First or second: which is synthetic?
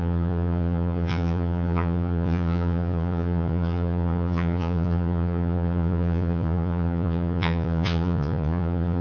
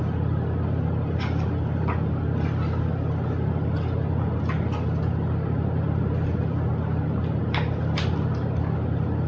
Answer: first